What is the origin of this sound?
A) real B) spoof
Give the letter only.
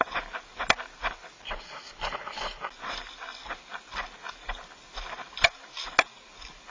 A